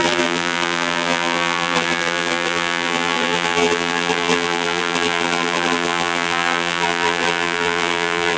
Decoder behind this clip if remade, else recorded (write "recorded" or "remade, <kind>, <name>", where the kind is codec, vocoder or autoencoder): remade, vocoder, BigVGAN v2